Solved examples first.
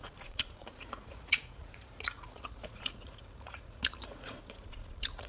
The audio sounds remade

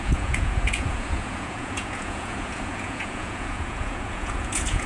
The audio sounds remade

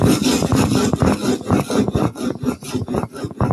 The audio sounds recorded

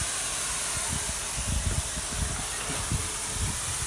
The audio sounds recorded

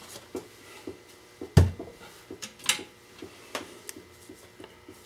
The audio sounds recorded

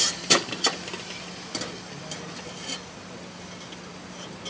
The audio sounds recorded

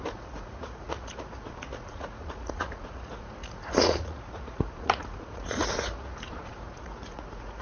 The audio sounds remade